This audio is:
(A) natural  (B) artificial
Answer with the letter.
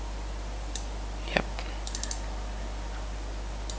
A